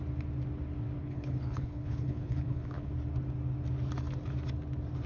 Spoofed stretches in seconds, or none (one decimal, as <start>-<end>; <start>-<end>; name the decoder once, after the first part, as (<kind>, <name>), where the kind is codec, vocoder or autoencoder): 1.0-2.9 (codec, HILCodec)